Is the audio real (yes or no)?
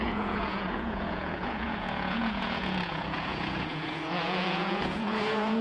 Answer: no